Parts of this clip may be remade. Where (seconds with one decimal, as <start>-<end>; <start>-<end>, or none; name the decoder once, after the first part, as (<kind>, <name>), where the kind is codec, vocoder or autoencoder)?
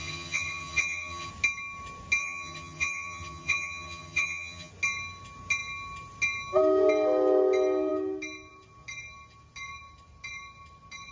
0.0-1.3 (vocoder, HiFi-GAN); 2.2-4.7